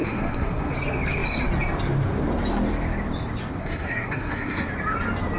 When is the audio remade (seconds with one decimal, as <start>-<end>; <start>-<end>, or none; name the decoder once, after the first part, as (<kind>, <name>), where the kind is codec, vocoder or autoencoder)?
0.0-0.7 (codec, SNAC); 3.6-4.7